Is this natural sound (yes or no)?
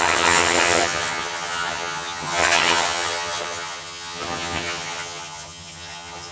no